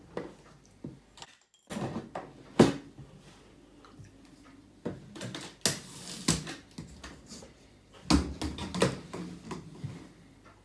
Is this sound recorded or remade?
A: recorded